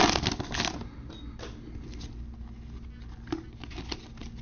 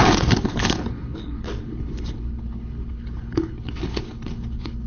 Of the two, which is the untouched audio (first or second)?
first